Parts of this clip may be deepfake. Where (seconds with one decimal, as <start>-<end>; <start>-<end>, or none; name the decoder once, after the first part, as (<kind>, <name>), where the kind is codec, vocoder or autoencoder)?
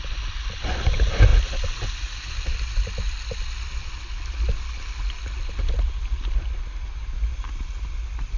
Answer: none